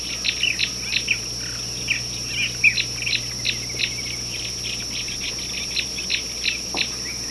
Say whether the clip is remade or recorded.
recorded